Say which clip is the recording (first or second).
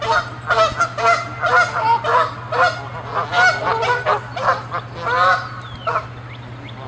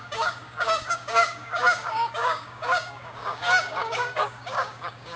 first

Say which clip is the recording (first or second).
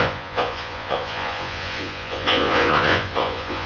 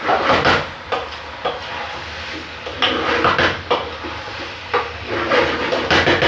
second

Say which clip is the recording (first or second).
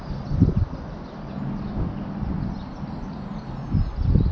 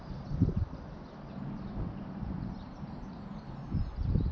first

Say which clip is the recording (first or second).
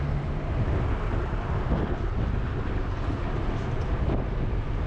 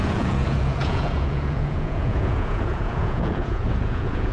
first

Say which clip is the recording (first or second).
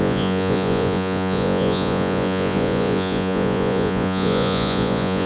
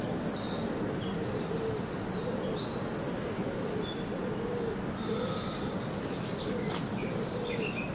second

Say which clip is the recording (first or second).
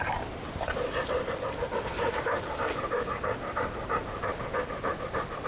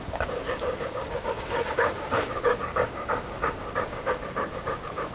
first